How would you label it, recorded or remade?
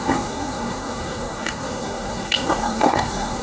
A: remade